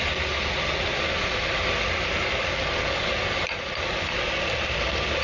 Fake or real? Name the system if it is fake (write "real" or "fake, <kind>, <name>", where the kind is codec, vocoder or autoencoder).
real